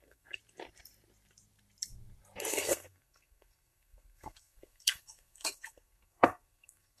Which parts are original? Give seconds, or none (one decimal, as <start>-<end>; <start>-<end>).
0.4-2.5

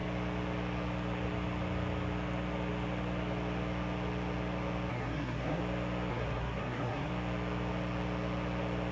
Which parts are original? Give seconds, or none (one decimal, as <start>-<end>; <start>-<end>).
0.0-4.9; 5.6-6.1; 7.1-8.9

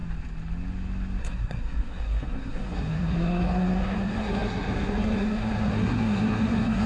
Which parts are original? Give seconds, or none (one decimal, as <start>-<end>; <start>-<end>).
0.0-1.2

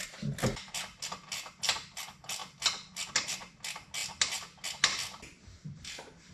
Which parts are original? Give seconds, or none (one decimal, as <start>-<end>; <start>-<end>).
0.0-6.3

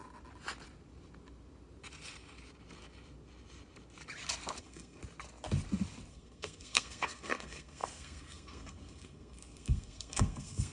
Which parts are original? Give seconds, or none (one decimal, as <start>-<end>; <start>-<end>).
0.0-4.6; 5.0-6.1

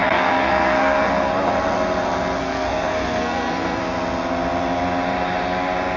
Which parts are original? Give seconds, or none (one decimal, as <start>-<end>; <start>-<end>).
1.3-2.4; 3.8-6.0

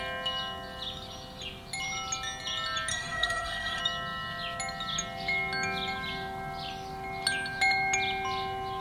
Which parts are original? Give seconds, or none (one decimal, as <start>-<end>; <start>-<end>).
0.0-2.9; 3.8-8.8